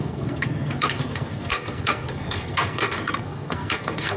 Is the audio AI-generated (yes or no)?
yes